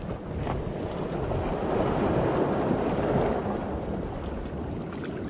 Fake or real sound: real